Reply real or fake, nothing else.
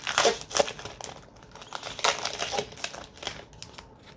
real